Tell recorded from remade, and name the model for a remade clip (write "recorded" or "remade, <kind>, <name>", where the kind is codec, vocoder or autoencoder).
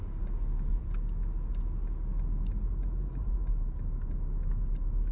recorded